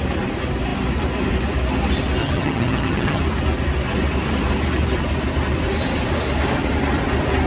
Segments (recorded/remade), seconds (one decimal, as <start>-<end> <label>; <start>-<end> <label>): 0.0-2.2 recorded; 2.2-3.2 remade; 3.2-7.5 recorded